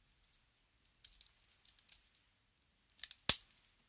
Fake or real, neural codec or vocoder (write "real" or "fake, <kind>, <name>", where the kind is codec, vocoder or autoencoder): real